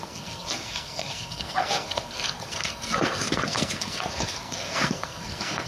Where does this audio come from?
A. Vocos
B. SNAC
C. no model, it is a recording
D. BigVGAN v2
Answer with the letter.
B